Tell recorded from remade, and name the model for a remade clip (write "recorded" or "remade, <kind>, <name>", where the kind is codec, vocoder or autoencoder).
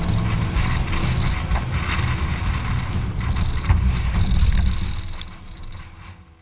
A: recorded